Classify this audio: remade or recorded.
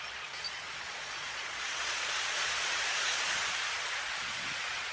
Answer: remade